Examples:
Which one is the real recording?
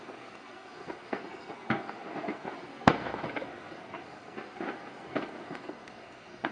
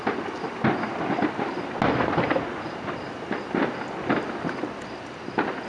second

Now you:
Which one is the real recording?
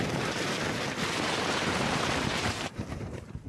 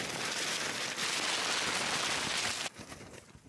second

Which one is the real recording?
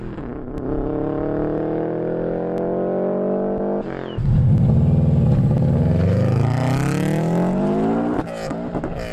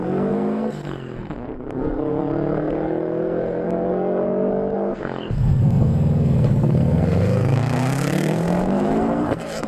first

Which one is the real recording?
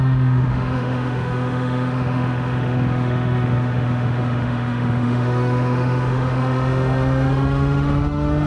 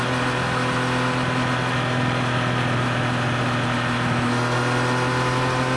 second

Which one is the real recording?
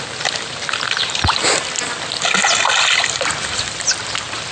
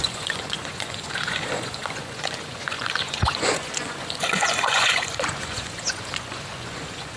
first